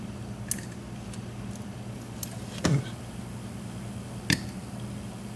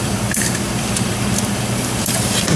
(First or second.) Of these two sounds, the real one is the first